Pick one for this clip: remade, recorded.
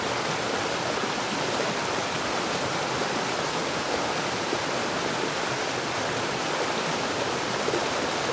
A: remade